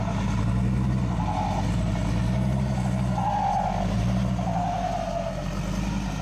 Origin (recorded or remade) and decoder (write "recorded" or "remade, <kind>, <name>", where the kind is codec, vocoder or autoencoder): recorded